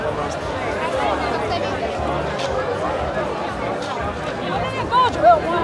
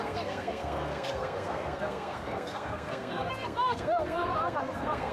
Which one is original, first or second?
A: first